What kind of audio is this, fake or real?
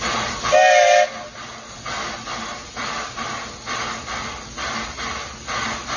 real